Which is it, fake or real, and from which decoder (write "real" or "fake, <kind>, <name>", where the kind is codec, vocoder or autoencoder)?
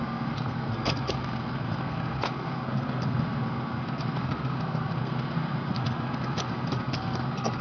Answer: fake, codec, SNAC